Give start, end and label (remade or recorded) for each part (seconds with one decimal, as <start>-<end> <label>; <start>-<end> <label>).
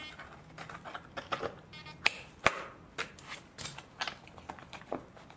0.0-5.4 recorded